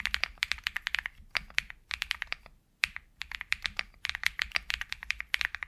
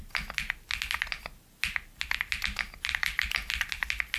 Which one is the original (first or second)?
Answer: second